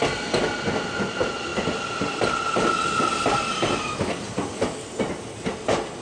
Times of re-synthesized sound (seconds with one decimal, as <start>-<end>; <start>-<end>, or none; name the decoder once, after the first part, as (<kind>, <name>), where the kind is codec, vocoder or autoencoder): none